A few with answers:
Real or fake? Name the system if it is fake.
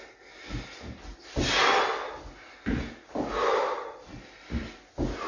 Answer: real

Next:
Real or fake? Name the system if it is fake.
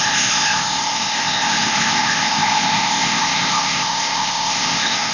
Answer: fake, codec, ZipCodec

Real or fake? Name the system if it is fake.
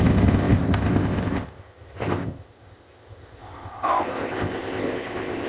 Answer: fake, codec, ZipCodec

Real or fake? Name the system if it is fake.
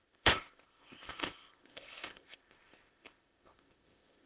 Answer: fake, codec, ZipCodec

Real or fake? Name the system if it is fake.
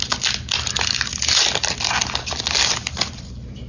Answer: real